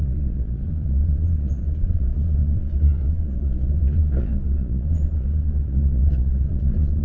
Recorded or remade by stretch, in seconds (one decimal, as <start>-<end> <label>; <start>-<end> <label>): 0.0-7.0 remade